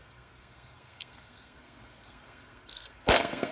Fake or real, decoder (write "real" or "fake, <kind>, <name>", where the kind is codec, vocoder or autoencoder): fake, codec, SNAC